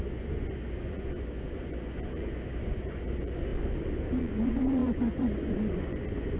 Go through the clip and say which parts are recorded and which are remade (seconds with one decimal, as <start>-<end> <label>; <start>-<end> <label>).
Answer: 0.0-3.5 remade; 3.5-4.2 recorded; 4.2-6.4 remade